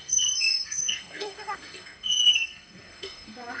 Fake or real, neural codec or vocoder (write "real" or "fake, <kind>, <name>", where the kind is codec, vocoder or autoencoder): fake, codec, SNAC